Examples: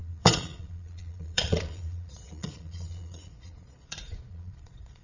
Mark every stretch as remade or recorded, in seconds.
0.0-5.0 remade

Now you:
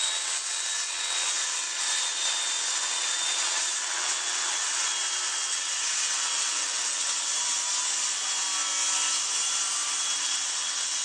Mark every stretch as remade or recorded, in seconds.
0.0-4.9 remade; 4.9-5.5 recorded; 5.5-7.3 remade; 7.3-10.2 recorded; 10.2-11.0 remade

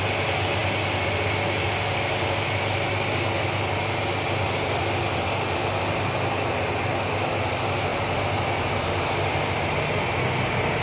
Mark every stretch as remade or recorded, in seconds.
0.0-7.9 recorded; 7.9-9.4 remade; 9.4-10.8 recorded

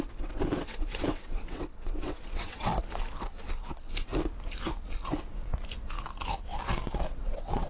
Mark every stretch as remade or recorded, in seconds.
0.0-2.7 remade; 2.7-7.1 recorded; 7.1-7.7 remade

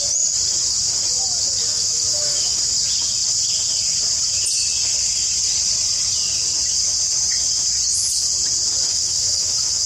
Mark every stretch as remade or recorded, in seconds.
0.0-1.7 recorded; 1.7-2.6 remade; 2.6-8.9 recorded; 8.9-9.9 remade